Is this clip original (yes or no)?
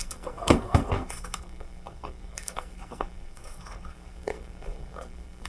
no